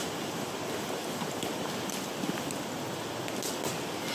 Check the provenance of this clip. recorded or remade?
recorded